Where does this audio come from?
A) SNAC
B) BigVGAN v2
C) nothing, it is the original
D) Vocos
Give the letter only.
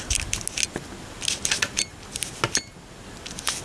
C